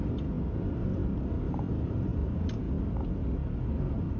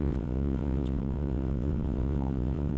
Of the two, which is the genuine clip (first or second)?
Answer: first